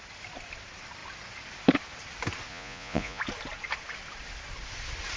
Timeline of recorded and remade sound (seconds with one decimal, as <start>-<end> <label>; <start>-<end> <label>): 0.0-2.5 recorded; 2.5-3.2 remade; 3.2-5.2 recorded